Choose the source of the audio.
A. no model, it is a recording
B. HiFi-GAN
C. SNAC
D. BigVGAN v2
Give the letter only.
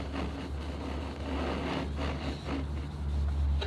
A